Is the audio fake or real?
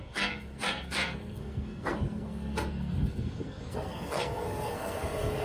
fake